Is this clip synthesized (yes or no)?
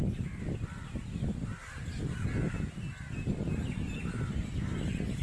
no